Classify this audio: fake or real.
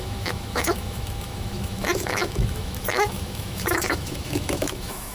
fake